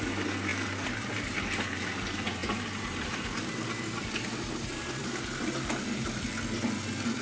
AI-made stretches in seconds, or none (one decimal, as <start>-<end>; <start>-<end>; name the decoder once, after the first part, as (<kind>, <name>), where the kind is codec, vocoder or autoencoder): 0.5-1.3 (vocoder, BigVGAN v2); 2.4-6.2